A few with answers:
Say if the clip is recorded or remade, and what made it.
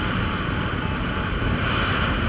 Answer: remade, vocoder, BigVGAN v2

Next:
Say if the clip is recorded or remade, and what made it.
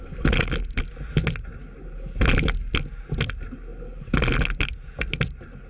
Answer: recorded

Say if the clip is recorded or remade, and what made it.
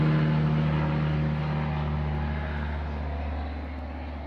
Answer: recorded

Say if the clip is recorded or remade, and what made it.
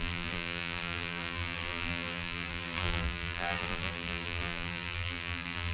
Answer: remade, vocoder, BigVGAN v2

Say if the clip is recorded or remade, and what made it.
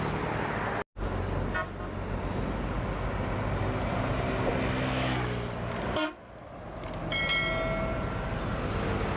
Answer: recorded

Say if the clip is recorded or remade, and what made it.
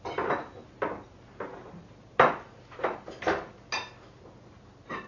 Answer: recorded